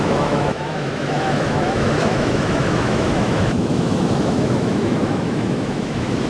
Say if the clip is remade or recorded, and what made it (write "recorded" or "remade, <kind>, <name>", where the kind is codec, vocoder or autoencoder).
remade, autoencoder, DAC-VAE